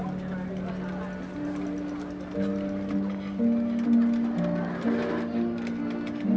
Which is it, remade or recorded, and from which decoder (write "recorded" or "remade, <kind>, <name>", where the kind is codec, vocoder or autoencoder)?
recorded